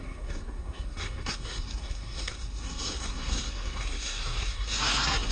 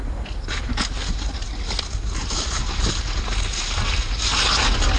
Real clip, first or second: second